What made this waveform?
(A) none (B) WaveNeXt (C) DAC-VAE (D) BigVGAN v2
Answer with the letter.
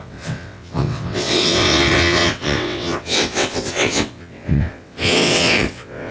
B